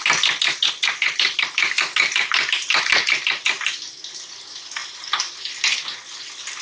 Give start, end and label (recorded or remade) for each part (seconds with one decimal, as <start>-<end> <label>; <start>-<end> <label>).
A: 0.0-6.6 recorded